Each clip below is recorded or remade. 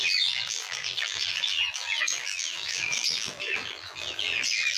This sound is remade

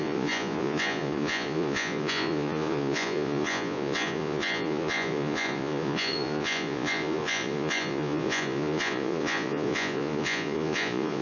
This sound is remade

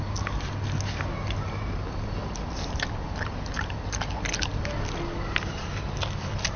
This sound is recorded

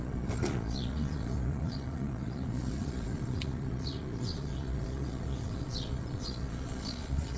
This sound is remade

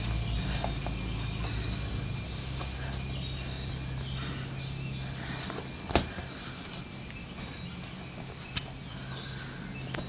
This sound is recorded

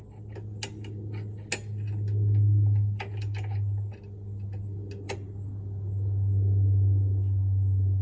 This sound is recorded